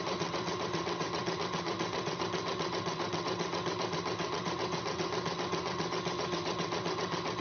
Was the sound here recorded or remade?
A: remade